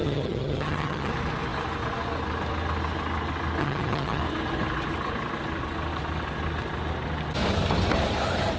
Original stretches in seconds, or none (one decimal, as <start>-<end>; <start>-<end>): 1.1-3.6; 4.2-8.6